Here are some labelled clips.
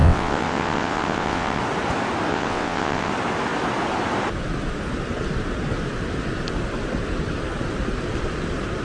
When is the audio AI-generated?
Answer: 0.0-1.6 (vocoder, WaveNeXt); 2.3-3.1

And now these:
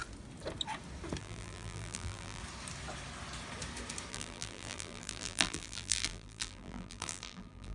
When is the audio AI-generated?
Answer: 1.2-2.4 (vocoder, BigVGAN v2); 4.1-7.7

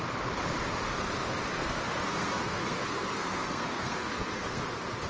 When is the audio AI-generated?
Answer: 1.5-4.6 (codec, SNAC)

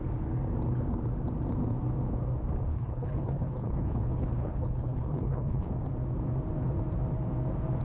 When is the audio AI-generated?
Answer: 2.7-5.7 (codec, HILCodec)

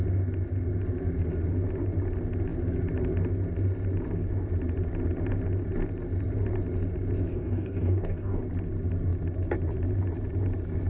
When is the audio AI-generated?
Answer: 7.3-8.4 (codec, DAC)

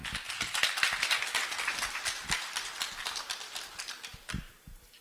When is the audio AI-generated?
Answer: none

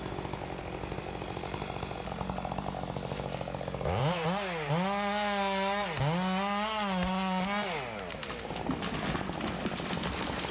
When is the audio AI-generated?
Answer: none